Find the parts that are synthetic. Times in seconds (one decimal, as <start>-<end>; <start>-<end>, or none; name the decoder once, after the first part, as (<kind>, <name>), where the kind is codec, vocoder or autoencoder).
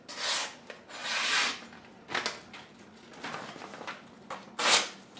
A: none